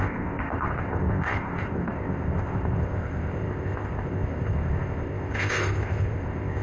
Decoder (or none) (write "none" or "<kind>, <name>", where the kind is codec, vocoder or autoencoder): codec, ZipCodec